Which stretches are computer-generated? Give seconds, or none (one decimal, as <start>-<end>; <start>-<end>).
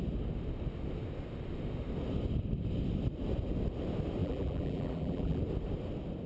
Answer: 4.2-5.4